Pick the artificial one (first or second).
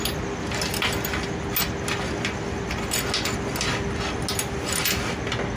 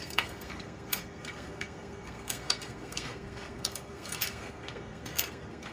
second